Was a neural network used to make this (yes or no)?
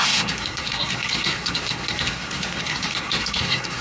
yes